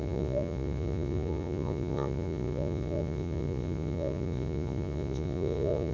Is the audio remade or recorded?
remade